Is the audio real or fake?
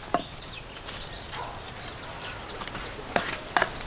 real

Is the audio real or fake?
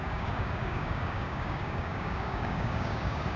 fake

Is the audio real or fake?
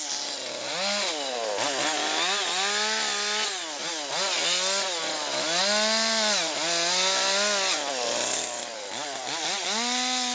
real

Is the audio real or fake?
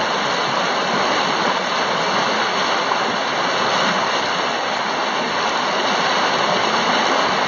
real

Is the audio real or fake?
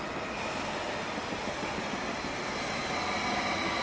real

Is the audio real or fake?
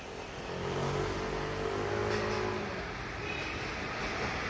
real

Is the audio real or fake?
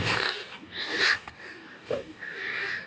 fake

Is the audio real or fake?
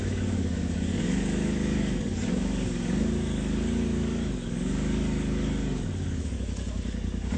fake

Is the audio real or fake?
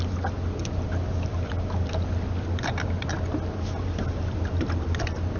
real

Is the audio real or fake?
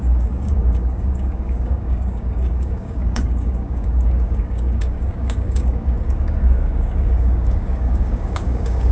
fake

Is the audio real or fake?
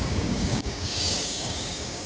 fake